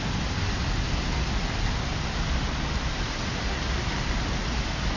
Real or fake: real